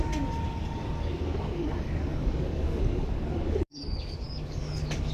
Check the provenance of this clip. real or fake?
fake